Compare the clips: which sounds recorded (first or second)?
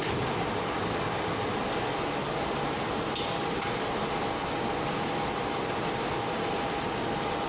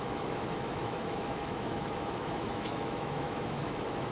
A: first